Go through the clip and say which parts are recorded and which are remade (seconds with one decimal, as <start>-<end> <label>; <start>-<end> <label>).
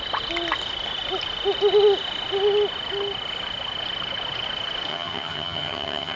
0.0-4.9 recorded; 4.9-6.2 remade